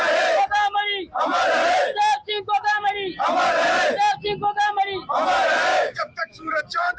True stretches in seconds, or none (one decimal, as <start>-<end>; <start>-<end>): 0.0-2.2; 2.9-5.7; 6.6-7.0